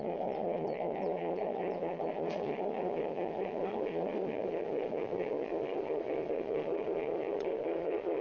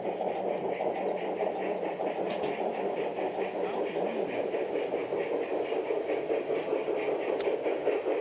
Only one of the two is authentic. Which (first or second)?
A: second